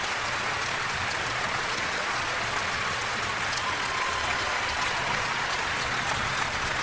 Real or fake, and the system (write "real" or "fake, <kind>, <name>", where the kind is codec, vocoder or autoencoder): fake, vocoder, Vocos